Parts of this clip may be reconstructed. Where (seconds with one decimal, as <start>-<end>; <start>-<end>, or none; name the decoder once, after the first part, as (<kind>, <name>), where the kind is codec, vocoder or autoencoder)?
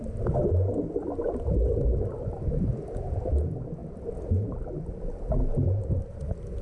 none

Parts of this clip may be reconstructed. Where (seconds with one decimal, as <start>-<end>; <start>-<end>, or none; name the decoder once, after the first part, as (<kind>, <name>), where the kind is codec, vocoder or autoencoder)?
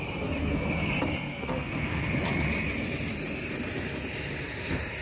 0.4-0.9 (codec, SNAC); 1.3-2.1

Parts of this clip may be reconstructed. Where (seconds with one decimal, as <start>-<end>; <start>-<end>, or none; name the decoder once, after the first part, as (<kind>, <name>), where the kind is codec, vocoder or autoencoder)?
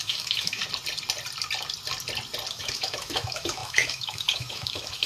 0.0-0.6 (autoencoder, DAC-VAE); 2.5-5.1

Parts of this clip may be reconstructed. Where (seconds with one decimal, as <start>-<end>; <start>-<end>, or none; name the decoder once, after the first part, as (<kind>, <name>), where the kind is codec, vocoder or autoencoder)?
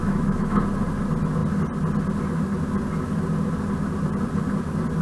0.0-0.6 (autoencoder, DAC-VAE)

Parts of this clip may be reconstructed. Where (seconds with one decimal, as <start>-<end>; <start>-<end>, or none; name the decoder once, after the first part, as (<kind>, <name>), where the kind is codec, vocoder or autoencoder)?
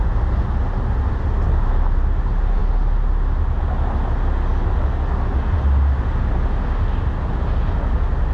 none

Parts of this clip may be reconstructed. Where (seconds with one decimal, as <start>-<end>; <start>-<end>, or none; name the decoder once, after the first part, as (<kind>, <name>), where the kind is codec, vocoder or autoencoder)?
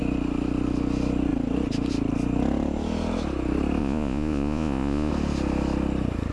3.8-5.1 (vocoder, Vocos)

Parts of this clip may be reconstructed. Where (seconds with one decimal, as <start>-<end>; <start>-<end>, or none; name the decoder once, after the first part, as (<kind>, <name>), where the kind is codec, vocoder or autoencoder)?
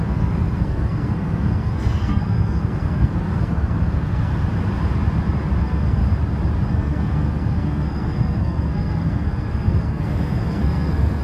0.0-4.3 (codec, SNAC); 5.6-6.0; 6.7-11.2